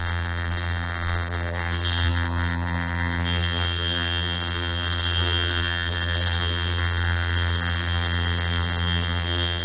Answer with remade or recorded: remade